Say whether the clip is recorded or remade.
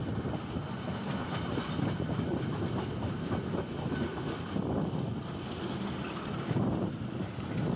recorded